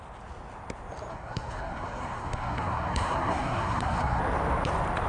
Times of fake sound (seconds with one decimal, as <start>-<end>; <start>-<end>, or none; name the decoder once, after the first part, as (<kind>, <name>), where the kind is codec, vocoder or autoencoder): 1.1-4.2 (codec, SNAC)